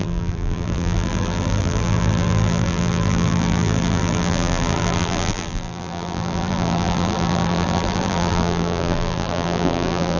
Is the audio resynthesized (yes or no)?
yes